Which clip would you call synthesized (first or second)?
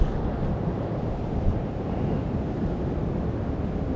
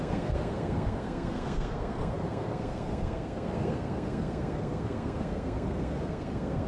second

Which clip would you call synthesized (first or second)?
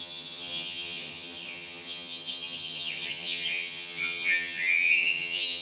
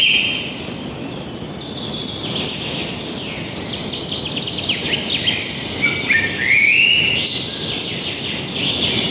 first